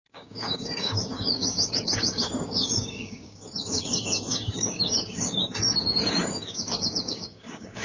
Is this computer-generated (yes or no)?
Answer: yes